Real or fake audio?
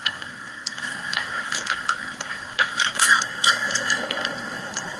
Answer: fake